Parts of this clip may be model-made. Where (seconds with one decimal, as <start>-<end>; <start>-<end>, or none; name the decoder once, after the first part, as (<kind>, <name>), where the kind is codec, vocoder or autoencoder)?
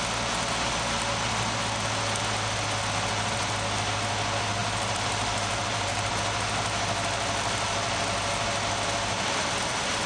4.6-6.1 (vocoder, BigVGAN v2)